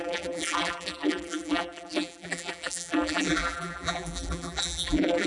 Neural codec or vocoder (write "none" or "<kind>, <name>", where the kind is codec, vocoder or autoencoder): vocoder, BigVGAN v2